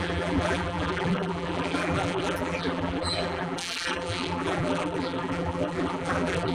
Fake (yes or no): yes